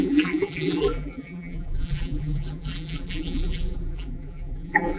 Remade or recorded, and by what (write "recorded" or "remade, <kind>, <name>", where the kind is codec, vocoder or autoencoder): remade, vocoder, BigVGAN v2